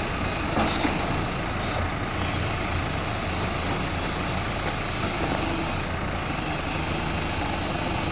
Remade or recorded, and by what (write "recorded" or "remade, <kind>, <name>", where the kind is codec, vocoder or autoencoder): recorded